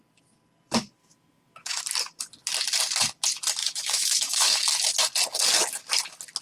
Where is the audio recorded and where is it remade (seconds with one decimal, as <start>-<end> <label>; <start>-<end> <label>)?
0.0-1.0 recorded; 1.0-1.8 remade; 1.8-3.6 recorded; 3.6-4.6 remade; 4.6-6.4 recorded